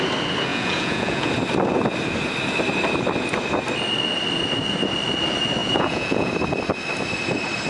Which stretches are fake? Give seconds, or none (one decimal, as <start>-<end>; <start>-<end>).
0.5-1.3; 5.6-6.3